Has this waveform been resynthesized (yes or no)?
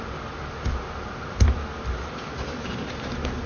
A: no